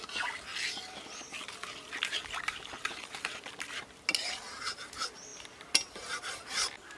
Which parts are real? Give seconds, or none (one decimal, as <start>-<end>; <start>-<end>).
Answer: 0.0-7.0